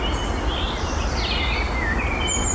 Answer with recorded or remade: recorded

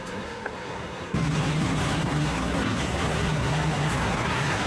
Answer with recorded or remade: remade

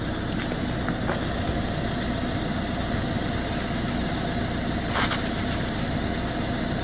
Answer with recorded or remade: recorded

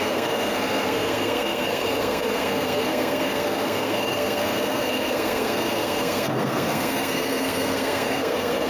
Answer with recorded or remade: remade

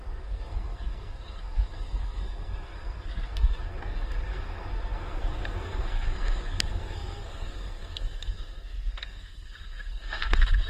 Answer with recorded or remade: remade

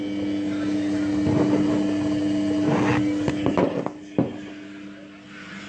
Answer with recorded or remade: recorded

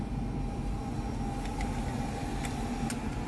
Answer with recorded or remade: recorded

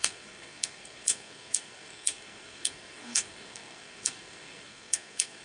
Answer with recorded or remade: remade